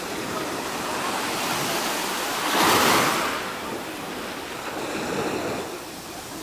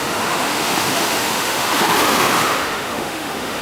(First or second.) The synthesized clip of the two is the second